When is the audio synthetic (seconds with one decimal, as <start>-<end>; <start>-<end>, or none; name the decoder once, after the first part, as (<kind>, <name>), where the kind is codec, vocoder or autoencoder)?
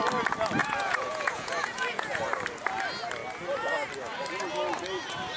0.6-2.2 (vocoder, Vocos)